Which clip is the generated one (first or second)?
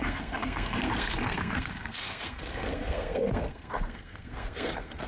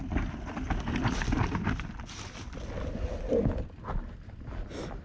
first